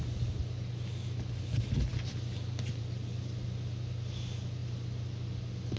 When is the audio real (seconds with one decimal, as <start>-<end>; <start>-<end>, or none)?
0.0-5.8